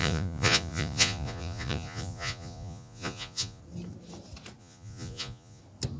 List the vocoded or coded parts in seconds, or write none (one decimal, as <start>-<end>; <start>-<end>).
0.0-3.6; 4.6-5.6